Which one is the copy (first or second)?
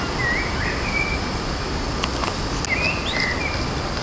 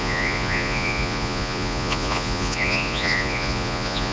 second